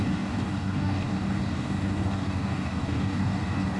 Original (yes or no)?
no